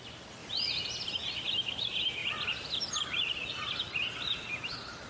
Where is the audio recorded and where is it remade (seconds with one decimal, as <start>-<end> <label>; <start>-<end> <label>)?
0.0-0.4 recorded; 0.4-0.9 remade; 0.9-5.1 recorded